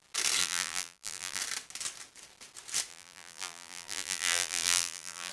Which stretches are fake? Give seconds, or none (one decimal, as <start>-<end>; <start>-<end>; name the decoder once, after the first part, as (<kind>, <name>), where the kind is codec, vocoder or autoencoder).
0.4-1.4 (vocoder, BigVGAN v2); 2.9-5.3